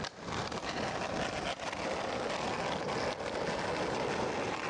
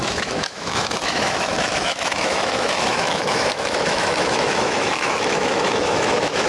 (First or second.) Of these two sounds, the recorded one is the first